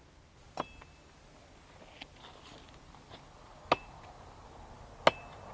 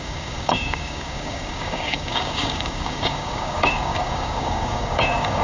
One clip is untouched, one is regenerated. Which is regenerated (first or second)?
second